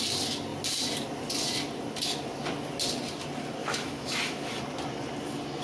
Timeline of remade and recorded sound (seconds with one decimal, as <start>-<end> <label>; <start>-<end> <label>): 0.0-3.6 recorded; 3.6-4.6 remade; 4.6-5.6 recorded